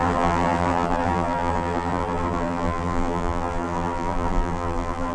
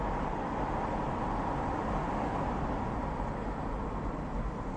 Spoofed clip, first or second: first